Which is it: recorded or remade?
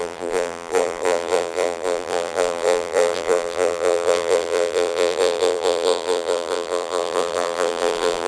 remade